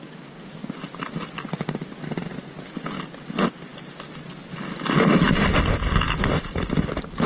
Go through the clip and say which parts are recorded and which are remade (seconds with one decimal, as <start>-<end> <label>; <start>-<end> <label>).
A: 0.0-7.3 recorded